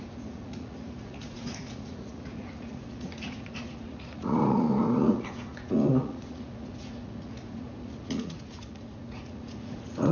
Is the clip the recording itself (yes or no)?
no